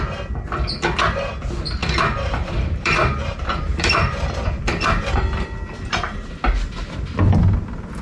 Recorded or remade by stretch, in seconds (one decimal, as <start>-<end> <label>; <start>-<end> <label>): 0.0-1.8 recorded; 1.8-5.6 remade; 5.6-8.0 recorded